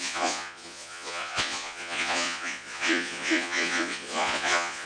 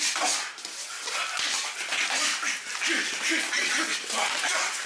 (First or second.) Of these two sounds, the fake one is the first